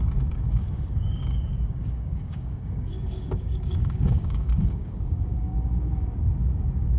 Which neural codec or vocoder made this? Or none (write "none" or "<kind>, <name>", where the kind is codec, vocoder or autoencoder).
codec, DAC